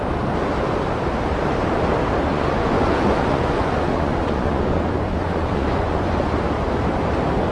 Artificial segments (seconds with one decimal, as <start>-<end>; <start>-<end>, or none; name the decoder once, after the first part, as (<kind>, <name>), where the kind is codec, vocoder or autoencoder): 2.3-6.2 (vocoder, Vocos)